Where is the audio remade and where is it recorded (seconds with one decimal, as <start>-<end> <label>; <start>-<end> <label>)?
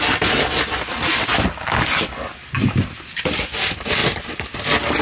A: 0.0-5.0 recorded